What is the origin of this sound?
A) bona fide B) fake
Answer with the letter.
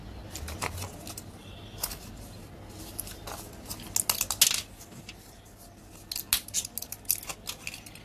A